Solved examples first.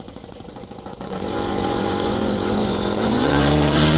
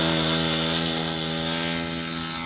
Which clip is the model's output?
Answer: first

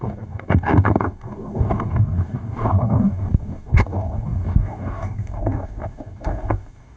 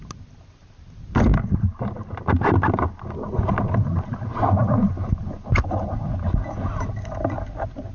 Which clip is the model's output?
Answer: first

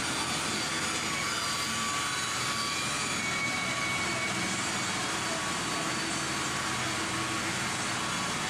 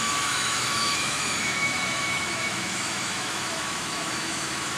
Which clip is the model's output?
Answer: second